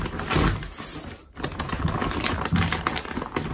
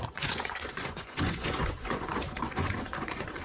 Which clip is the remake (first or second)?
second